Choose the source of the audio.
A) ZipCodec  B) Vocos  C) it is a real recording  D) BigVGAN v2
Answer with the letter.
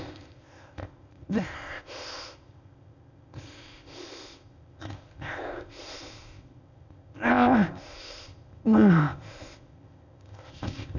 A